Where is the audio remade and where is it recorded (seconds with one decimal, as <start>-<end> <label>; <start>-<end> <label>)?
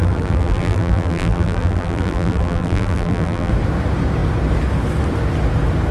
0.0-3.5 remade; 3.5-5.9 recorded